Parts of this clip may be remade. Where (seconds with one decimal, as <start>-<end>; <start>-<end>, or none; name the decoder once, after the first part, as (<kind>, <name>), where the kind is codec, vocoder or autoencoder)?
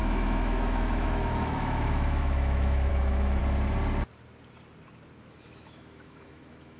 0.0-3.4 (autoencoder, DAC-VAE); 5.3-6.8